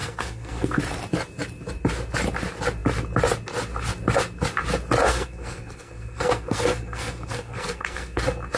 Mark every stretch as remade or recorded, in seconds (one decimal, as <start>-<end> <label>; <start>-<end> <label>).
0.0-0.8 remade; 0.8-5.1 recorded; 5.1-8.2 remade; 8.2-8.6 recorded